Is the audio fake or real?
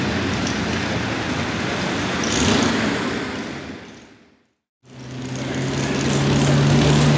real